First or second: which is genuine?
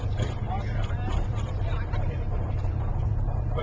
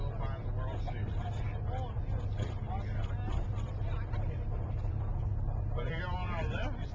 second